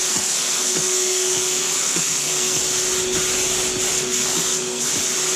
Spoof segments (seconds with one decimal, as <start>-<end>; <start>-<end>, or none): 0.0-2.6; 3.9-4.9